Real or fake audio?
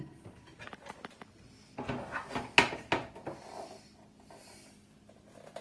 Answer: real